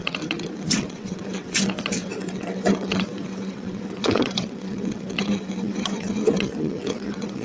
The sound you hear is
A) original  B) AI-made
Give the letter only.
B